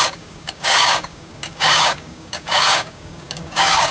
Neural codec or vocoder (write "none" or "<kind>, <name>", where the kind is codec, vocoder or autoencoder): codec, DAC